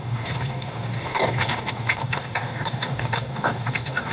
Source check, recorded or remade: remade